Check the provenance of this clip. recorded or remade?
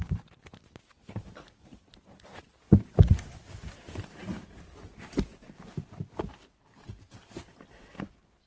recorded